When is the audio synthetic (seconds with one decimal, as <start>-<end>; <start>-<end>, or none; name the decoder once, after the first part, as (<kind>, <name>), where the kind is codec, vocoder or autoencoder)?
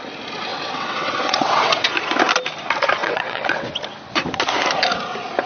0.5-1.9 (vocoder, WaveNeXt); 3.0-3.7